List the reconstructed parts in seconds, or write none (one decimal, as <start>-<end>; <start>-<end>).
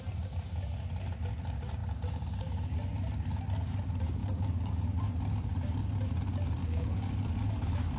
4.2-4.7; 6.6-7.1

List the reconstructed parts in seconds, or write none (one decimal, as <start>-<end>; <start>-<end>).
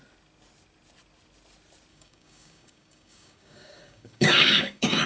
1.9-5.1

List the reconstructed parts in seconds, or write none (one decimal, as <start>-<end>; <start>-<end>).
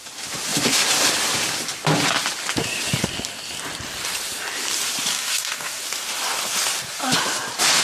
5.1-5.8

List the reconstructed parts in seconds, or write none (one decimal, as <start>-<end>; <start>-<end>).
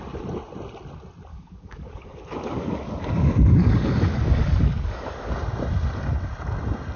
1.3-5.3